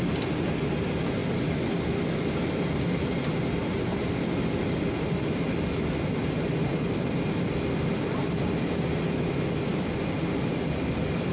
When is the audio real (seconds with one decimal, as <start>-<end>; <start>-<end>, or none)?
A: 0.0-11.3